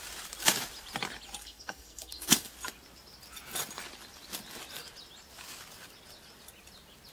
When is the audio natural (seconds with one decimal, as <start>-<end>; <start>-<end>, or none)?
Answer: 0.0-1.4; 2.5-7.1